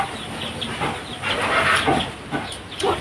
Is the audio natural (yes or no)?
yes